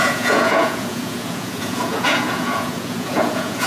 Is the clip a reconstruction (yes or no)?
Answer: yes